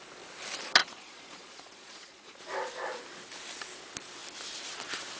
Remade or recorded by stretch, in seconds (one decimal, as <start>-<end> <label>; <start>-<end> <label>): 0.0-0.8 recorded; 0.8-2.4 remade; 2.4-5.2 recorded